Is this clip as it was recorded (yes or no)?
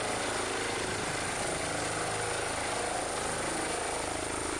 yes